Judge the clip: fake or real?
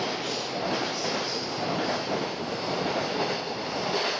real